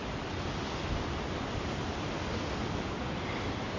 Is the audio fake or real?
real